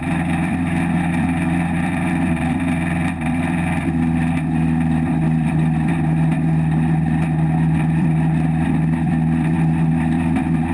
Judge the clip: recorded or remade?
remade